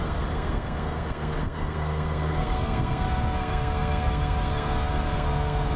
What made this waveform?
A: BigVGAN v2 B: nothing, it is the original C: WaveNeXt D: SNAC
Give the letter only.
D